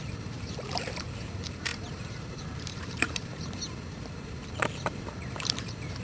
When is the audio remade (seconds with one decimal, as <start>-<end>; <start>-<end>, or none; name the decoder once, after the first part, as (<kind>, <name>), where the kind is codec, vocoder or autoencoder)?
0.0-6.0 (vocoder, BigVGAN v2)